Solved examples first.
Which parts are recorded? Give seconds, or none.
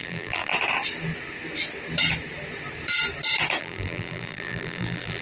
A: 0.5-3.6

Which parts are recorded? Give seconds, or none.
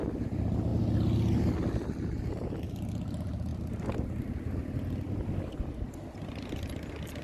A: 0.0-7.2